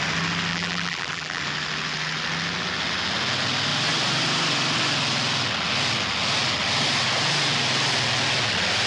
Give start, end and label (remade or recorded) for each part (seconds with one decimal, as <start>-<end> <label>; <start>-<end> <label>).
0.0-0.5 recorded; 0.5-1.4 remade; 1.4-8.9 recorded